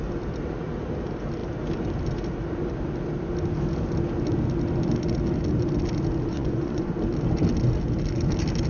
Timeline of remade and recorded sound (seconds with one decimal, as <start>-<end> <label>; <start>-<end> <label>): 0.0-6.3 recorded; 6.3-6.9 remade; 6.9-8.7 recorded